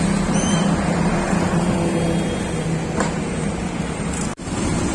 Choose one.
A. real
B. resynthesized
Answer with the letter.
A